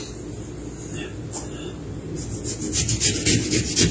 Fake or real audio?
real